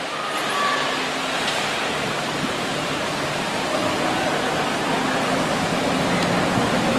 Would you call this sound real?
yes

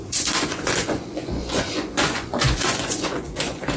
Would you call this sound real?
no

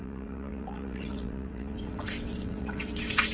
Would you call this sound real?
no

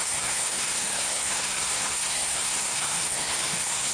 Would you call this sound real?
no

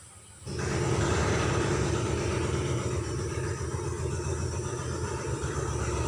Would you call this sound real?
yes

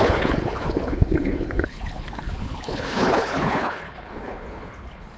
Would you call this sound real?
no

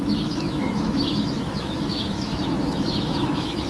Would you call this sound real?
no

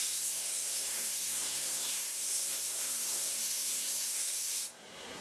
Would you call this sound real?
no